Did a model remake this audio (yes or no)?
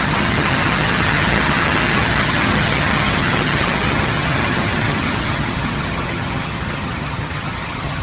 yes